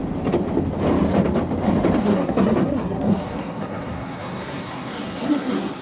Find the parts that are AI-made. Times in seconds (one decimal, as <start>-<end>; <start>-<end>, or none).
2.0-5.8